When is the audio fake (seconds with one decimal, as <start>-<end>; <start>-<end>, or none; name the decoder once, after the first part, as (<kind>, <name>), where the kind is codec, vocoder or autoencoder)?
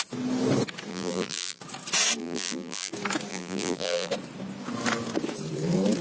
0.9-1.6 (vocoder, BigVGAN v2); 2.2-2.9; 3.3-4.1